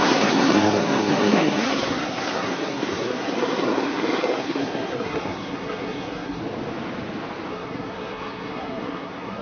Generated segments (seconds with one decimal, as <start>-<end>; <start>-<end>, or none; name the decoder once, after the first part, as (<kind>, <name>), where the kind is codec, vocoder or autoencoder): 0.0-6.4 (codec, SNAC); 7.5-9.4

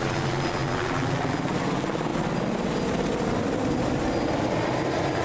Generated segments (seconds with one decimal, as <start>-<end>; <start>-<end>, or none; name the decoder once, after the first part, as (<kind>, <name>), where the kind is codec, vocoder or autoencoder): none

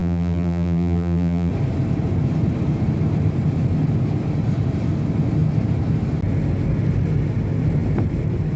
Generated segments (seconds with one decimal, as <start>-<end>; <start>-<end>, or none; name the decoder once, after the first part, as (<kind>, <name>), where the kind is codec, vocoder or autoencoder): 0.0-1.5 (vocoder, BigVGAN v2)

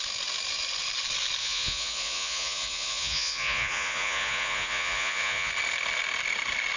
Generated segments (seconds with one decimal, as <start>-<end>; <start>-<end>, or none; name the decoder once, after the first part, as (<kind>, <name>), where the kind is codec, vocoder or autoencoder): 1.4-5.5 (vocoder, Vocos)

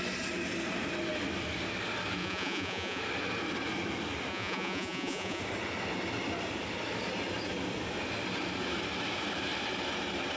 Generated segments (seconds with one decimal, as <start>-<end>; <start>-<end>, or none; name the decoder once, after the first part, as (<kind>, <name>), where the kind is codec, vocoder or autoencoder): 2.2-3.0 (vocoder, Vocos); 4.3-5.4

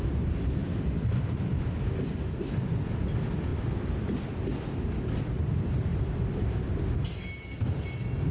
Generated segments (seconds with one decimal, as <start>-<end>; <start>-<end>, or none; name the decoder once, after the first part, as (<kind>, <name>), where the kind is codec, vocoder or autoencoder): 0.6-1.6 (vocoder, BigVGAN v2); 5.9-6.7

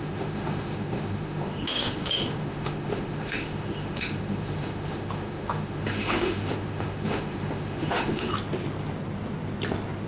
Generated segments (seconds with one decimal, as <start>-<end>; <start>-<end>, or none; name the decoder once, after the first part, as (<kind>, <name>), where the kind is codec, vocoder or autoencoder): 0.0-8.3 (autoencoder, DAC-VAE)

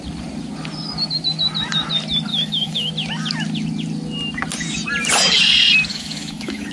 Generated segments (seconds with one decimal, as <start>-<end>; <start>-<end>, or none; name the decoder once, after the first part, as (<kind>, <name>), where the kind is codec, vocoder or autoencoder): 2.3-2.9 (autoencoder, DAC-VAE); 5.9-6.7